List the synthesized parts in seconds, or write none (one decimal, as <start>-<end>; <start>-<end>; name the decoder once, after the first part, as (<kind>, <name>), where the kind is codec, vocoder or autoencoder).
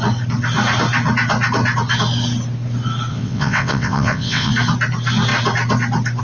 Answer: 3.1-4.5 (vocoder, WaveNeXt)